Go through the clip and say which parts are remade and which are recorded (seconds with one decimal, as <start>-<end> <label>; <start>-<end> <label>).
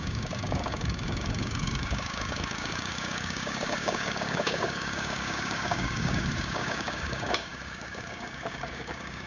0.0-9.3 remade